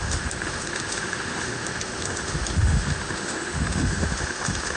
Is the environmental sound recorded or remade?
remade